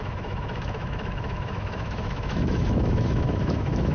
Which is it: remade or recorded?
remade